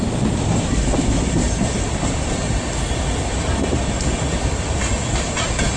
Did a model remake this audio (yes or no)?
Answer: no